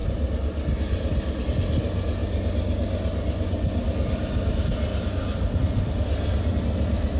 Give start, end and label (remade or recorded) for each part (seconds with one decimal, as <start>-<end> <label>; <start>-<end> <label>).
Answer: 0.0-7.2 recorded